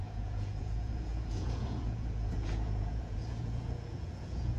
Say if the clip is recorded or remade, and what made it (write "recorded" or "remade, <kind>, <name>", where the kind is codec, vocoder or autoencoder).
remade, vocoder, Vocos